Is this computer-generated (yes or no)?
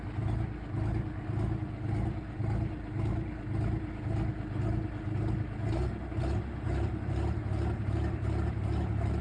no